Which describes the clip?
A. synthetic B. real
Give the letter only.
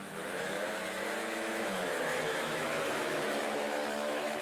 A